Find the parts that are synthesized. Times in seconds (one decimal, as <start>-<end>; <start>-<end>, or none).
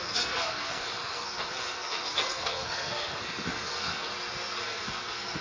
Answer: 0.0-4.1; 4.6-5.4